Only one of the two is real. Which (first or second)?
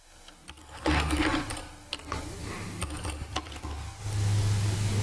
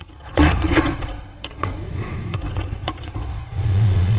first